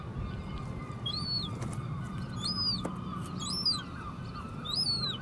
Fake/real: real